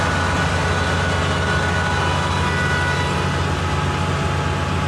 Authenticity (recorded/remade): recorded